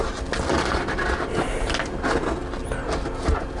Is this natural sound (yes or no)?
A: yes